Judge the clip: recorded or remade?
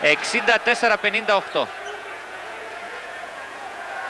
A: remade